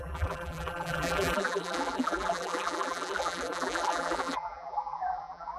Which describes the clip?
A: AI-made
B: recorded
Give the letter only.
A